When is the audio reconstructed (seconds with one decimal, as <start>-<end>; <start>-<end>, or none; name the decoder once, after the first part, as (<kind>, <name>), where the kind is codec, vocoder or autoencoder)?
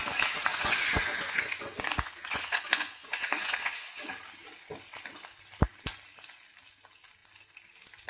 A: 0.5-4.1 (vocoder, Vocos)